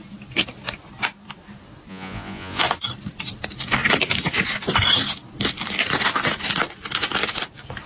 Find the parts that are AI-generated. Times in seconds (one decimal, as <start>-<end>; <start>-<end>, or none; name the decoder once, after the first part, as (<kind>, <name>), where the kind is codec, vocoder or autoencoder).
1.9-2.6 (vocoder, Vocos)